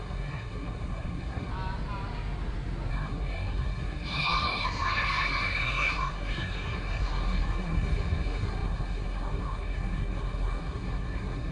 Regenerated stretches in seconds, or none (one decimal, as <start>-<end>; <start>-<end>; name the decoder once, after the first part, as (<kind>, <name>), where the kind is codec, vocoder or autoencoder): 0.0-1.5 (codec, SNAC); 2.9-11.5